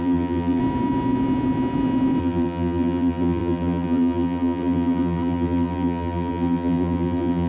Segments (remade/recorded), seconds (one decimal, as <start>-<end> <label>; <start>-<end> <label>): 0.0-0.6 remade; 0.6-2.2 recorded; 2.2-7.5 remade